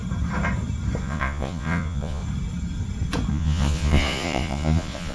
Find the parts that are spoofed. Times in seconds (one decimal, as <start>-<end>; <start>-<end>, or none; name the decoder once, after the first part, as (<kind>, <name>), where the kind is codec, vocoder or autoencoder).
1.0-2.2 (vocoder, Vocos); 3.3-5.1